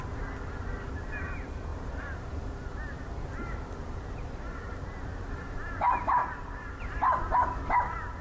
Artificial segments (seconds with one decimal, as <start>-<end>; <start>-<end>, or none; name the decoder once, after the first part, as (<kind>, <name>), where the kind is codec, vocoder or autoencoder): none